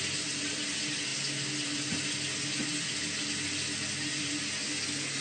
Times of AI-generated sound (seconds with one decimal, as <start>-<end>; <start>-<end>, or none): none